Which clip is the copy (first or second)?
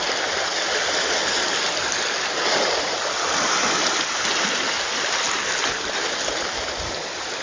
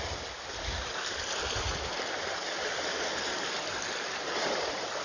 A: second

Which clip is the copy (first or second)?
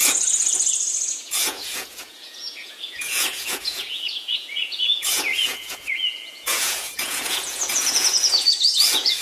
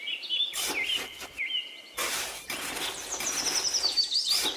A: first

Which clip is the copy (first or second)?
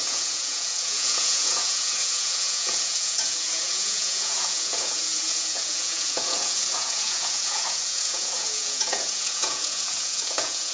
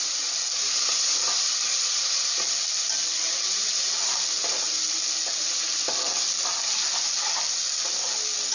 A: first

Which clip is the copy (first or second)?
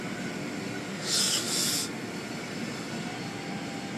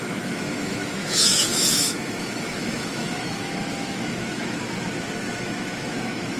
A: second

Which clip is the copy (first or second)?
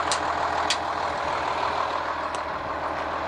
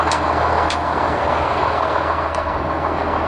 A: second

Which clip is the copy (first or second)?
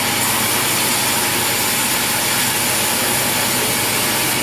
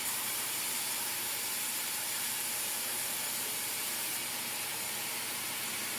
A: second